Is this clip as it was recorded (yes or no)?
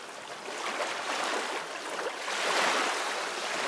yes